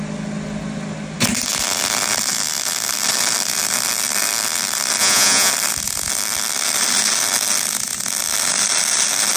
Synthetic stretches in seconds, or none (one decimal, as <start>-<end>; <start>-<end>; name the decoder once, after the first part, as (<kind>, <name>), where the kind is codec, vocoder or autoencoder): 5.0-5.5 (vocoder, Vocos)

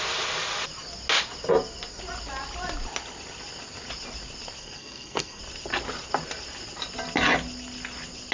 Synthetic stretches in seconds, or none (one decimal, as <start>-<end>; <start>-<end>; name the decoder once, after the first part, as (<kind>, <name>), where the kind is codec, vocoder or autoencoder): 4.6-5.4 (codec, SNAC)

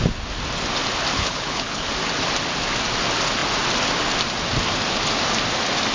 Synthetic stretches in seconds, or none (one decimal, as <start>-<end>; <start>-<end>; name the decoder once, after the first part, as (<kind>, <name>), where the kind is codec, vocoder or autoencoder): 1.1-1.9 (codec, HILCodec)

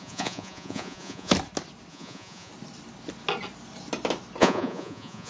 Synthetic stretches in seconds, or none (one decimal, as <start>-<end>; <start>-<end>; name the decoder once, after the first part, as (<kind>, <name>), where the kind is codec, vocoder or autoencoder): 0.0-1.3 (vocoder, Vocos); 1.9-2.5; 4.4-5.3